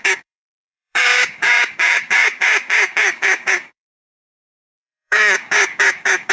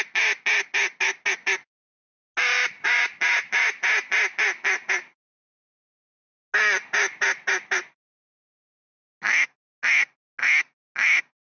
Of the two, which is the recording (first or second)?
second